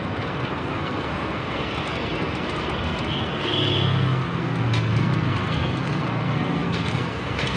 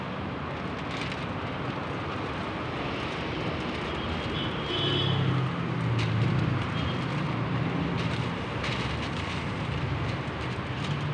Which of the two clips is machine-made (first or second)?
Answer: first